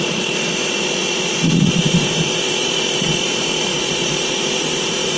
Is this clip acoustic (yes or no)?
no